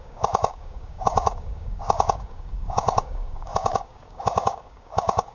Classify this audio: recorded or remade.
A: remade